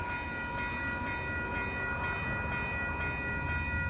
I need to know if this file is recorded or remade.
recorded